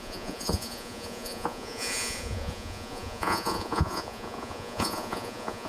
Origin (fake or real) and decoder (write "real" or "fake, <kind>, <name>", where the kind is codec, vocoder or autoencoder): fake, vocoder, Vocos